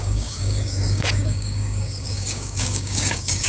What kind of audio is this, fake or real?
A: fake